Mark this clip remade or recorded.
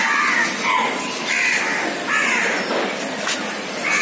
recorded